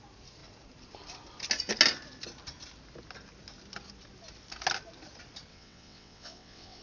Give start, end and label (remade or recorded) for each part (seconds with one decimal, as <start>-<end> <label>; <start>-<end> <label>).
0.0-5.5 recorded; 5.5-6.8 remade